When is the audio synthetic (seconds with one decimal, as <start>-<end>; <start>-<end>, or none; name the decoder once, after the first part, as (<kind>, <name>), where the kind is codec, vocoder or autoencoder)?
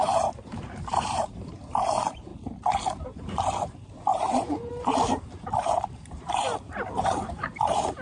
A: 0.0-2.3 (vocoder, BigVGAN v2); 3.0-8.0